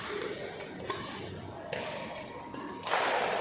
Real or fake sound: real